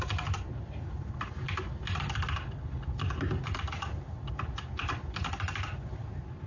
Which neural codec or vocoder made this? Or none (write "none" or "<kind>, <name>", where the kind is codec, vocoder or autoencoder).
none